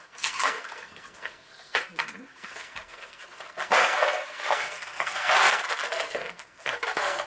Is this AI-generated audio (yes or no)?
yes